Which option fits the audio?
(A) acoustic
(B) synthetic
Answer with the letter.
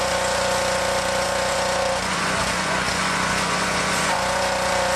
B